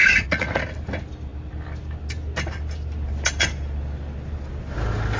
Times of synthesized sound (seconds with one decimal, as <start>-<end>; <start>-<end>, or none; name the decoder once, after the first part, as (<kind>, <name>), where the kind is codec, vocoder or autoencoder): 0.0-0.6 (vocoder, Vocos)